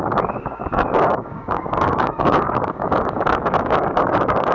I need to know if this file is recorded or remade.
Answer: remade